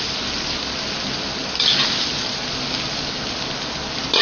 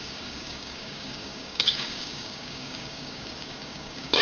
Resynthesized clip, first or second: second